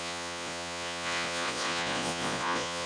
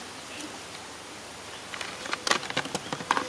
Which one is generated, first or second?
first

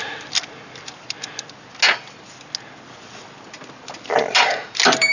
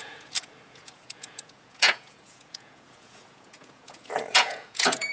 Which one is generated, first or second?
second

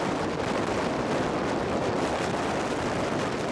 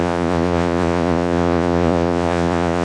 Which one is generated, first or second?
second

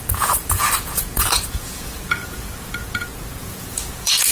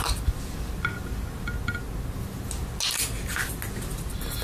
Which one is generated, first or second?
first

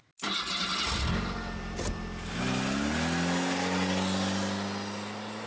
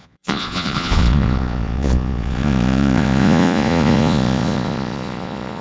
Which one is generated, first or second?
second